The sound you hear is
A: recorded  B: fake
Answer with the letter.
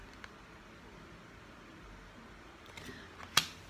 A